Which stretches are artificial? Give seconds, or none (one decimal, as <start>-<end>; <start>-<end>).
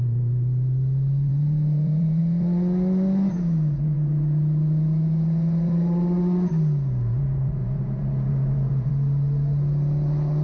1.3-2.2; 7.6-8.9